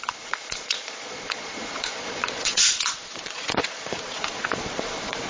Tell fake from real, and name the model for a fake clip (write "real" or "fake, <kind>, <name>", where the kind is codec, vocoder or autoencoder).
fake, vocoder, Vocos